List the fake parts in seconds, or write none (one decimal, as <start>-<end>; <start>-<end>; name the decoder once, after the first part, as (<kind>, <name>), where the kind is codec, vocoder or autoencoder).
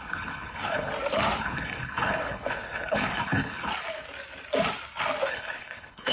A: 0.0-0.9 (codec, HILCodec); 1.4-3.7; 5.3-6.1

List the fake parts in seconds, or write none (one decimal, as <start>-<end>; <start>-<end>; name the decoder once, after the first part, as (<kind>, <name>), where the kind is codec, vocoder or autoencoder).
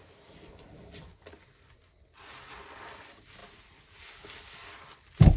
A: none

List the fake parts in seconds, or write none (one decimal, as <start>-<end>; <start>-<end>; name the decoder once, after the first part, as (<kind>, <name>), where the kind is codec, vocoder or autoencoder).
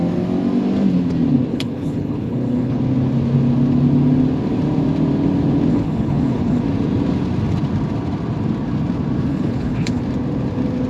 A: 1.5-2.8 (codec, HILCodec); 5.7-6.6; 9.3-10.0